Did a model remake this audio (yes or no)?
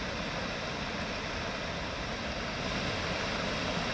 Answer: no